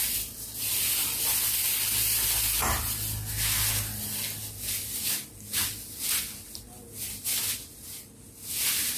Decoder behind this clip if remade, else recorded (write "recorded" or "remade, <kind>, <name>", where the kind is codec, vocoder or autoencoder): recorded